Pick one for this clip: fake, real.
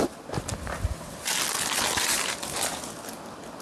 real